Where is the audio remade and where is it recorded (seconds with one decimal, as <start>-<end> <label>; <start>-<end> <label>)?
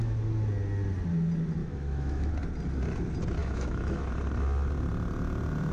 0.0-1.6 recorded; 1.6-2.3 remade; 2.3-3.4 recorded; 3.4-4.1 remade; 4.1-5.7 recorded